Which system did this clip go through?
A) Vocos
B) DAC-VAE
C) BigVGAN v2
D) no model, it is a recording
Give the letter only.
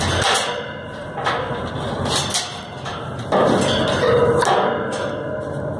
D